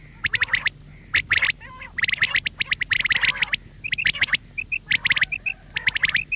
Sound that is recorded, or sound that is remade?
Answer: recorded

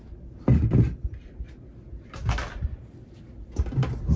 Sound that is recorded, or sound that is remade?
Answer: recorded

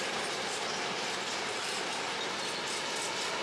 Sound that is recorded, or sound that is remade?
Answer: recorded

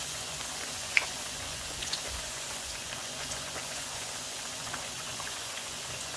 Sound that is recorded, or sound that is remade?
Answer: remade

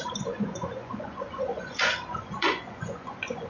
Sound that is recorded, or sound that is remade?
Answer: remade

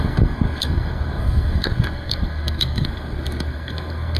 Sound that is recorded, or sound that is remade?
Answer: remade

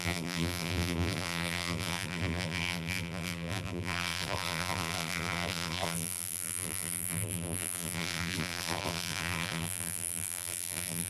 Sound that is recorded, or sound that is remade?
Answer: remade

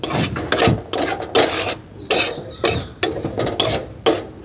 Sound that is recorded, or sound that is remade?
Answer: recorded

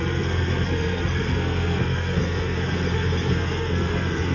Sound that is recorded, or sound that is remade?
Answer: remade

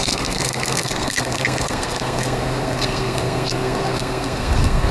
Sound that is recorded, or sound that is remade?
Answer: remade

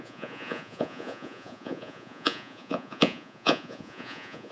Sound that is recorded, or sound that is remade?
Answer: remade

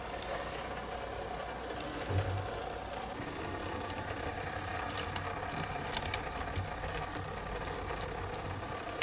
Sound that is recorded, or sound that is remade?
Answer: recorded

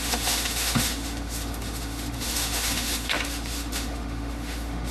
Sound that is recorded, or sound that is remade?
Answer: remade